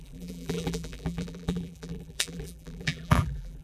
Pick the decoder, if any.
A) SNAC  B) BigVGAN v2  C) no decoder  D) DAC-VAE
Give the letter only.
B